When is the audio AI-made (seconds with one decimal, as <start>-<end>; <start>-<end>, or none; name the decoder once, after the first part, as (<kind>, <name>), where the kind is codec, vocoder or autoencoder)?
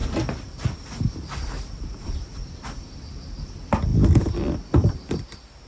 0.0-3.9 (vocoder, BigVGAN v2); 4.7-5.7